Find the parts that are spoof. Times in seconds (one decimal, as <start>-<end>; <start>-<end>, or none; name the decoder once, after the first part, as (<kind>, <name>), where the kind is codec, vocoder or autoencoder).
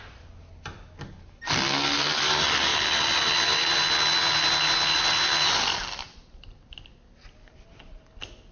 none